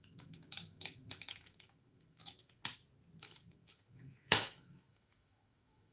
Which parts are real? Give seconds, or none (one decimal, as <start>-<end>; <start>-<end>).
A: 2.6-3.2